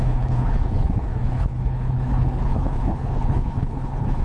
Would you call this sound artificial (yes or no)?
yes